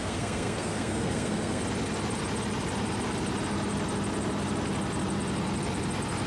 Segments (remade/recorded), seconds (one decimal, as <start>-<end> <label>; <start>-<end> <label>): 0.0-1.6 remade; 1.6-6.3 recorded